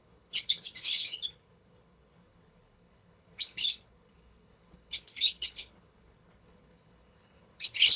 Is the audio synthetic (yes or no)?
yes